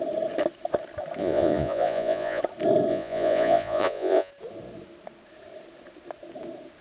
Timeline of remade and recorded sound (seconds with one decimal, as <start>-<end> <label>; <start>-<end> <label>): 0.0-1.2 recorded; 1.2-2.4 remade; 2.4-2.9 recorded; 2.9-4.3 remade; 4.3-6.8 recorded